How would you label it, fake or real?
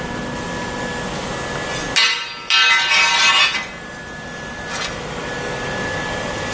real